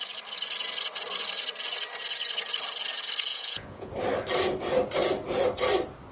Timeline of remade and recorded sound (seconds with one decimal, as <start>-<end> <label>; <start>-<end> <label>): 0.0-3.3 recorded; 3.3-3.9 remade; 3.9-6.1 recorded